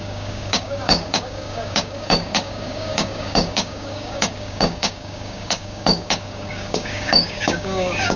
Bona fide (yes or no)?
no